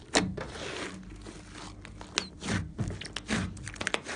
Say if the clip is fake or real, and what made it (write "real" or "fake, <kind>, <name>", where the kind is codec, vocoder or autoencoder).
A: real